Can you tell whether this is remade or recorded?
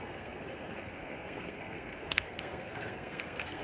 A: remade